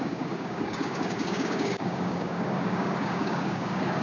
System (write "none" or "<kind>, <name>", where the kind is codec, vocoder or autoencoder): codec, DAC